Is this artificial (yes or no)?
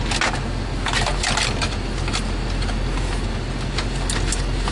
no